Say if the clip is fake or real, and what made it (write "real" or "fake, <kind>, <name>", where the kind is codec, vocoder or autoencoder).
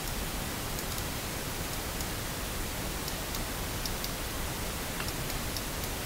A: real